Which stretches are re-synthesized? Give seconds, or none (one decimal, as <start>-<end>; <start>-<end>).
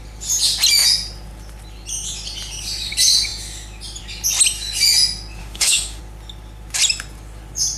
5.4-6.0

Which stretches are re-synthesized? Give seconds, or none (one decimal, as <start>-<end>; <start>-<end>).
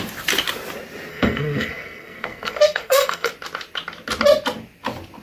1.1-3.3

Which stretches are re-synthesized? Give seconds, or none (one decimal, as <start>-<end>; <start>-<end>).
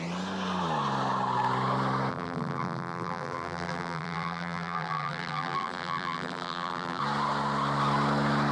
2.1-7.0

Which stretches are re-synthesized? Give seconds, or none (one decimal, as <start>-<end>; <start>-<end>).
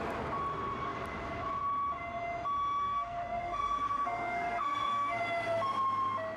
2.8-5.2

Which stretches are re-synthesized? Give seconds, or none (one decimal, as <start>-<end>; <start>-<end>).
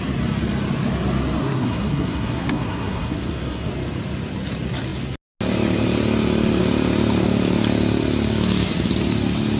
1.4-3.7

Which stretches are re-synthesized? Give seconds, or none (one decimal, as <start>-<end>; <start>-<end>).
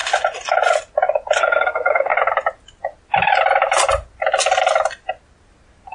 1.4-2.1